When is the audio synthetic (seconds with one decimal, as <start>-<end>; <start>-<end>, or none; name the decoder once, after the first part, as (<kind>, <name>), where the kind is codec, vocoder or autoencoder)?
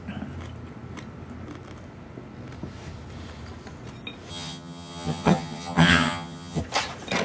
4.3-6.6 (vocoder, HiFi-GAN)